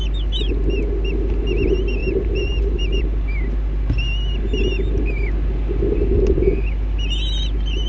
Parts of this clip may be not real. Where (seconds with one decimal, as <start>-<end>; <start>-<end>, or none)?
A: 2.0-3.0